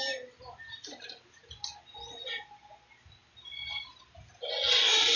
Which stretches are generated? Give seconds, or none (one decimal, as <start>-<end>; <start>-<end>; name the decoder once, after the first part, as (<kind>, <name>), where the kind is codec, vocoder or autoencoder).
none